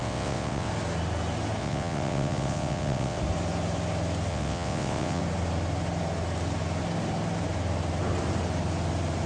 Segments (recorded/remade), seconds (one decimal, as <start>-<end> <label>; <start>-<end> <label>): 0.0-0.7 remade; 0.7-1.6 recorded; 1.6-3.2 remade; 3.2-4.3 recorded; 4.3-5.2 remade; 5.2-9.3 recorded